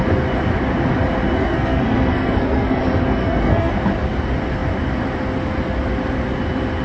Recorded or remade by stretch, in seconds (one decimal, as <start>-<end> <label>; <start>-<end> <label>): 0.0-1.5 recorded; 1.5-2.8 remade; 2.8-3.2 recorded; 3.2-3.7 remade; 3.7-6.8 recorded

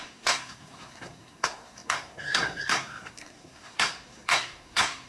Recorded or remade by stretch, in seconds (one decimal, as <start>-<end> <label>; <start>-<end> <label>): 0.0-5.1 remade

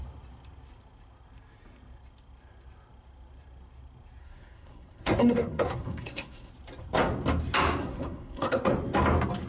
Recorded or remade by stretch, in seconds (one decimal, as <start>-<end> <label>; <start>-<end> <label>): 0.0-4.2 recorded; 4.2-6.5 remade; 6.5-7.8 recorded; 7.8-8.7 remade; 8.7-9.5 recorded

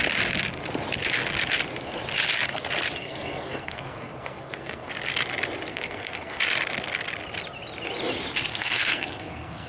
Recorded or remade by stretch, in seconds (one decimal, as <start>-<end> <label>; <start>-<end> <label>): 0.0-3.0 recorded; 3.0-4.9 remade; 4.9-5.7 recorded; 5.7-6.4 remade; 6.4-8.5 recorded; 8.5-9.7 remade

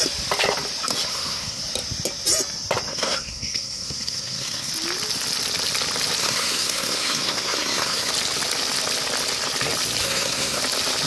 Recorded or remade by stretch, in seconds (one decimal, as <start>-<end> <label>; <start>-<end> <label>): 0.0-1.1 recorded; 1.1-1.6 remade; 1.6-2.9 recorded; 2.9-4.7 remade; 4.7-6.2 recorded; 6.2-8.1 remade; 8.1-10.0 recorded; 10.0-10.6 remade; 10.6-11.1 recorded